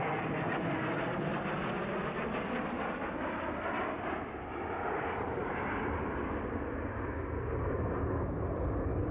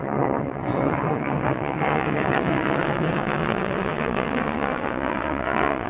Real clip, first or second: first